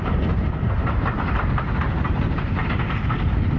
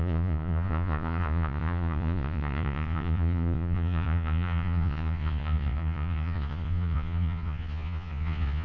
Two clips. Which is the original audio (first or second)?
first